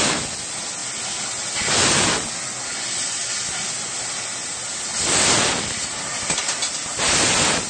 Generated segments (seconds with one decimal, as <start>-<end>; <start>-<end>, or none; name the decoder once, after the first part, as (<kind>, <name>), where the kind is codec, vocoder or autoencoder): none